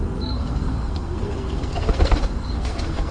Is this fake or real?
fake